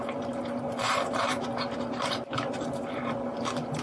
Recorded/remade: remade